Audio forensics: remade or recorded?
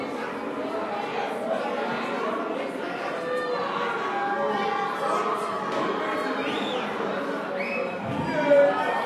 recorded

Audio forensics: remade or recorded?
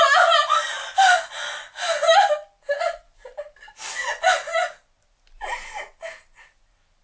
recorded